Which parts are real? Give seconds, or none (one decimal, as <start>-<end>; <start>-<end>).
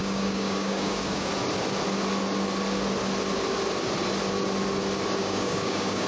1.3-5.2